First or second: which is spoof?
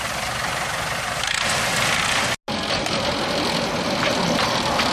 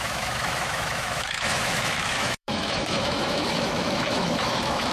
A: second